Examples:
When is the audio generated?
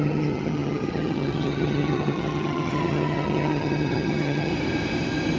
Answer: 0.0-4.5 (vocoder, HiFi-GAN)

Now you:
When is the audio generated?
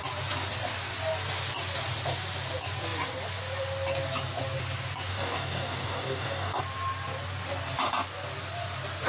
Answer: 5.1-6.6 (codec, DAC)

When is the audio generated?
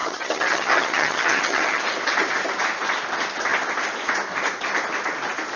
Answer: 0.0-1.8 (vocoder, HiFi-GAN)